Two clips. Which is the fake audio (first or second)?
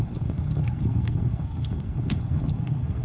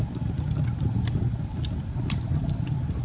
first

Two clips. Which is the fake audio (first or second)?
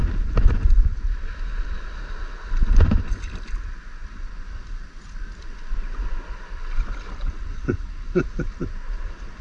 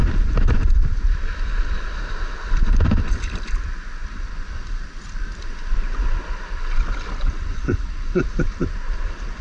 second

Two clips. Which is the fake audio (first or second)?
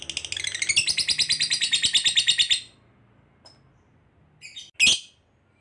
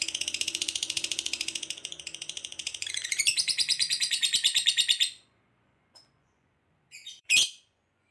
second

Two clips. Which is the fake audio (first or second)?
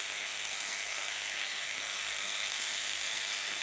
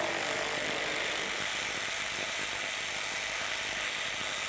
first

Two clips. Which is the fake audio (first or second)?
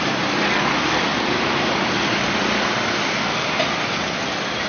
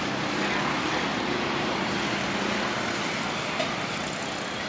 first